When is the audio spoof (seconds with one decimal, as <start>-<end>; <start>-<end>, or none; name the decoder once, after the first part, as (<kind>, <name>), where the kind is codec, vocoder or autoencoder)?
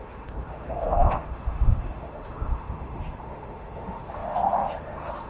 0.0-5.3 (autoencoder, DAC-VAE)